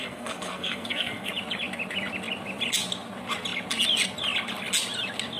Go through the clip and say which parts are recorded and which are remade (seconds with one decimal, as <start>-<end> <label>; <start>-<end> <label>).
0.0-1.3 remade; 1.3-5.4 recorded